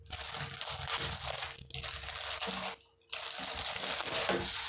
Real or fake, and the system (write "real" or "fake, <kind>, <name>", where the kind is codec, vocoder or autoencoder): real